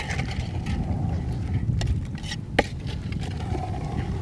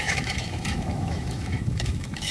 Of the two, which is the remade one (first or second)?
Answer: second